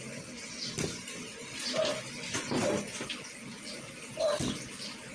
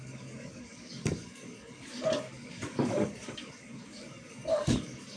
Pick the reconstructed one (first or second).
second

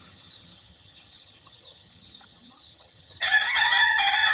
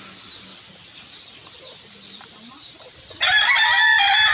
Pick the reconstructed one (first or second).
first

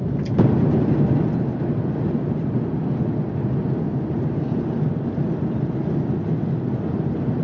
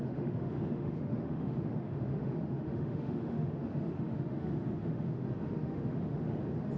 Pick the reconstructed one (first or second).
second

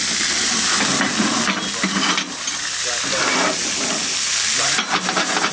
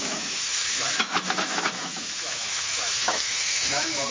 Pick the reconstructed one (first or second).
second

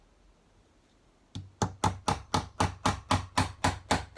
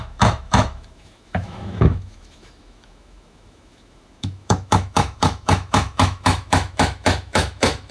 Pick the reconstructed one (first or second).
second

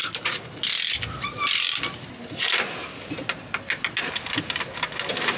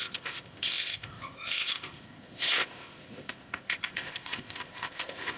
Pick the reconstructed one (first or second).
second